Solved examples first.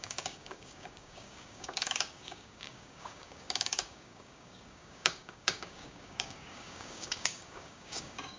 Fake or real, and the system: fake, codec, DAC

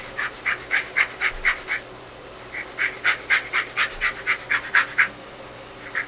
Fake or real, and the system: real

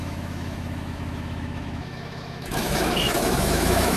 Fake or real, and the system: fake, autoencoder, DAC-VAE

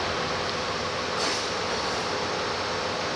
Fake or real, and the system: real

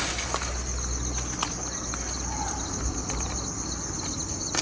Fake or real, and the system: real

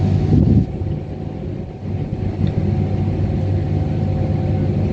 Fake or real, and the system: real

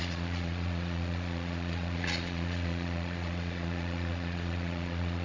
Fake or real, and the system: fake, vocoder, Vocos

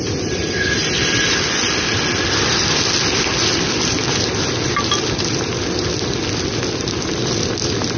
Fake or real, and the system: real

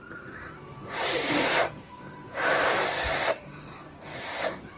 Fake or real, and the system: fake, vocoder, BigVGAN v2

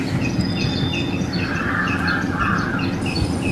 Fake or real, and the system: real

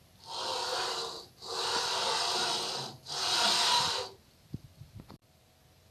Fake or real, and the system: fake, vocoder, BigVGAN v2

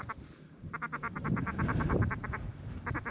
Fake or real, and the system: fake, vocoder, BigVGAN v2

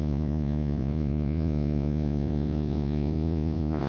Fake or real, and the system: fake, vocoder, Vocos